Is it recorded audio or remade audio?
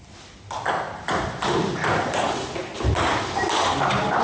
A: recorded